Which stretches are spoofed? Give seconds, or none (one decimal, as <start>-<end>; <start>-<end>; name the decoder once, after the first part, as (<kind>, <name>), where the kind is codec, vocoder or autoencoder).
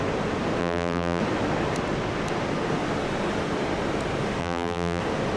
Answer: 0.6-1.2 (vocoder, BigVGAN v2); 4.4-5.0